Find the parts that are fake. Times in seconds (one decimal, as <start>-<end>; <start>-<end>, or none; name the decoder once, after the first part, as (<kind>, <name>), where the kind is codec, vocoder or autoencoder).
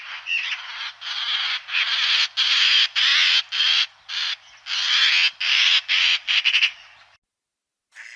none